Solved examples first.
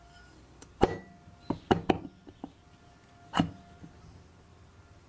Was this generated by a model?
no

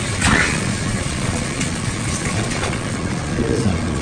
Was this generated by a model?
yes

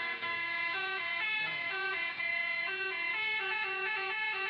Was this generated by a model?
yes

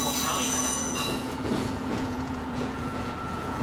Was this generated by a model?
yes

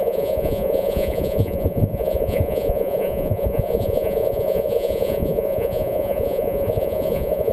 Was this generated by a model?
yes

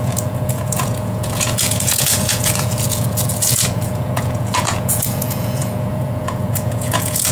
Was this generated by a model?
yes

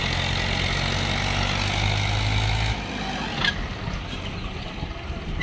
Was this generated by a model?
no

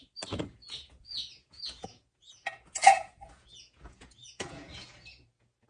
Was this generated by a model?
yes